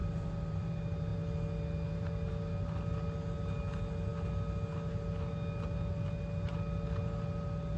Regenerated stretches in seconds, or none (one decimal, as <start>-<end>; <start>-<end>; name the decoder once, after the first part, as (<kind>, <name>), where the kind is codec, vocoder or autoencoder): 0.0-0.7 (vocoder, BigVGAN v2)